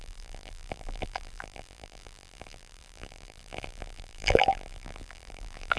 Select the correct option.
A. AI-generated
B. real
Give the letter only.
A